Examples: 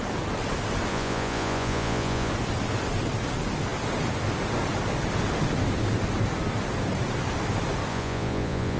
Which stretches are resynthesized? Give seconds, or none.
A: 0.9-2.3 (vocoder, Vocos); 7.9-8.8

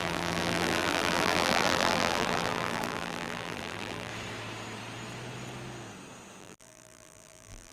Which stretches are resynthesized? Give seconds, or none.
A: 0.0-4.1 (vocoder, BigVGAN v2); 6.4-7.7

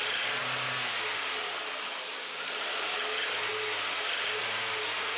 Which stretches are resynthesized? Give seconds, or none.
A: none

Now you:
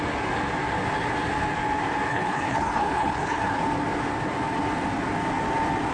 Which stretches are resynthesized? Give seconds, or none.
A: 2.1-3.6 (codec, HILCodec)

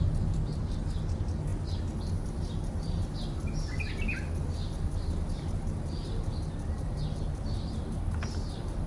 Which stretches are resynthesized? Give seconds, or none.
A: none

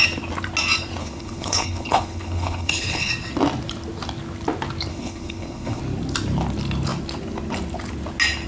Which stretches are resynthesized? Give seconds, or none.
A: 1.0-3.1 (codec, HILCodec); 4.9-5.8

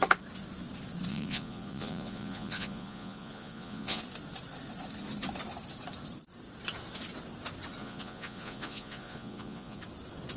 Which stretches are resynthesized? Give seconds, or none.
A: 1.1-4.0 (vocoder, Vocos); 7.8-9.8